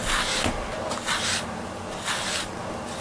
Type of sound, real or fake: real